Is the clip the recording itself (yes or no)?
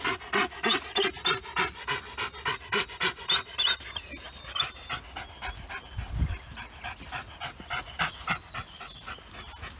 yes